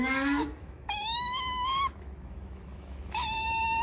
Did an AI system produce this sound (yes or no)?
yes